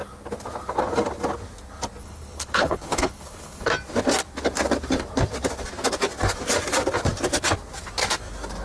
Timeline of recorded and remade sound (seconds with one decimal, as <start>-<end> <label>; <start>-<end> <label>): 0.0-2.0 recorded; 2.0-3.7 remade; 3.7-8.6 recorded